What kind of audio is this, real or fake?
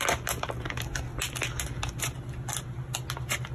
real